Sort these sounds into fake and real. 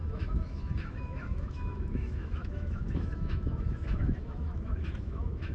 fake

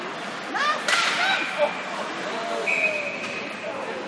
real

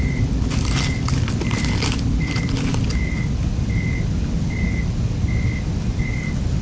real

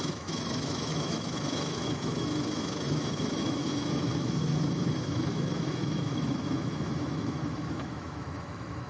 fake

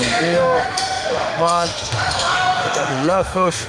fake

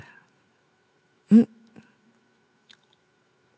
fake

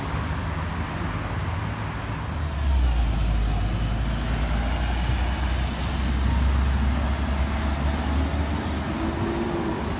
real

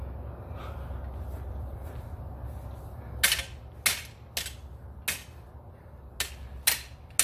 real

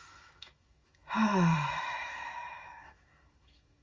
fake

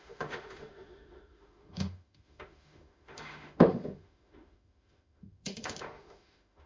fake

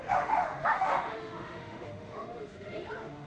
fake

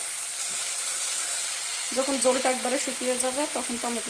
real